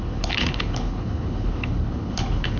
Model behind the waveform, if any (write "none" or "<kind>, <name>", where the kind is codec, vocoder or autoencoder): codec, HILCodec